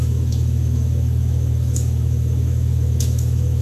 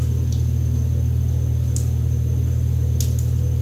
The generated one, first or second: first